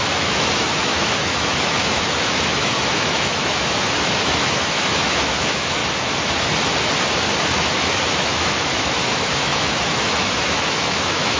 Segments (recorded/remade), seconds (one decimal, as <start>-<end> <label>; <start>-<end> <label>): 0.0-5.8 remade; 5.8-7.4 recorded; 7.4-11.4 remade